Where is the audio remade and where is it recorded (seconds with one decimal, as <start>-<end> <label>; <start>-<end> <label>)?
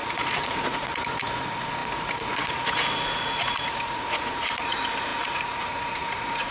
0.0-6.5 remade